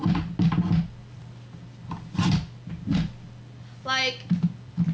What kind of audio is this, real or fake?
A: real